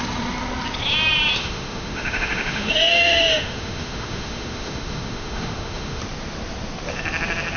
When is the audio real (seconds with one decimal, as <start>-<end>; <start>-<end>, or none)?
0.0-1.4; 6.0-7.6